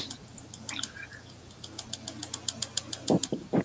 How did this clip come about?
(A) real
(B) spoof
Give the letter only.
A